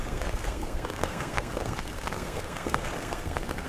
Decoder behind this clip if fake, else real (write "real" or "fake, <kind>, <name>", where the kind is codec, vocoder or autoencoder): fake, codec, SNAC